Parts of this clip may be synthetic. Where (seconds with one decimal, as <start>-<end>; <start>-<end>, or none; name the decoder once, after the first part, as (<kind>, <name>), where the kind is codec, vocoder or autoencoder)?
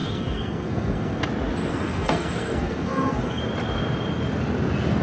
0.0-1.2 (codec, SNAC); 1.7-3.4